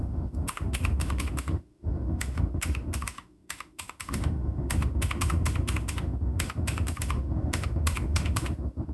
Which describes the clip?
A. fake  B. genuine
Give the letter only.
A